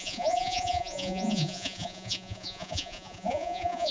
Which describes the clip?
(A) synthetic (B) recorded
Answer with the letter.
A